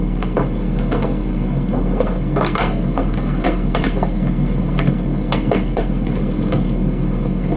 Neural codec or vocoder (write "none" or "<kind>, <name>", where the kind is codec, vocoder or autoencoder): codec, SNAC